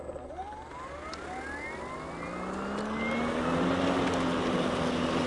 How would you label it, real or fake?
real